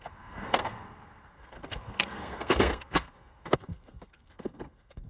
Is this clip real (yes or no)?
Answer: no